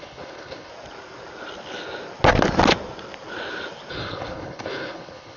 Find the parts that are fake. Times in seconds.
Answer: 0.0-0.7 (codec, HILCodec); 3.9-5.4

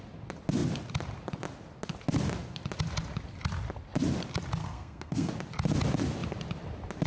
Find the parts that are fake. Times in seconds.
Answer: 4.6-5.3 (codec, SNAC)

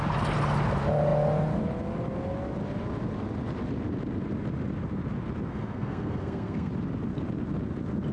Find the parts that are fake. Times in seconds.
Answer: 5.5-6.7 (codec, SNAC)

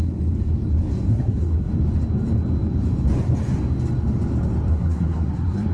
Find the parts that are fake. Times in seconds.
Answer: 1.1-1.7 (codec, SNAC); 4.7-5.7

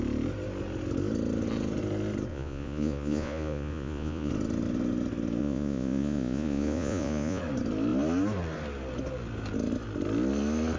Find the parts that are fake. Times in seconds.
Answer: 2.3-4.3 (vocoder, Vocos); 5.4-7.4

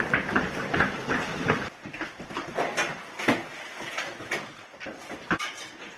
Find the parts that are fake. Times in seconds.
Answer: 1.3-2.2 (vocoder, BigVGAN v2); 5.0-5.6